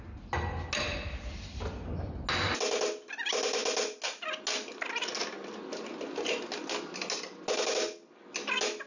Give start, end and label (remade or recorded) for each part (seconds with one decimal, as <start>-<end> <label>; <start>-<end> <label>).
0.0-8.9 recorded